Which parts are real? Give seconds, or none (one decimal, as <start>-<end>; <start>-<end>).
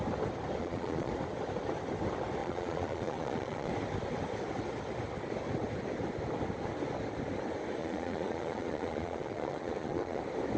0.0-0.6; 1.1-2.4; 3.7-7.8; 10.2-10.6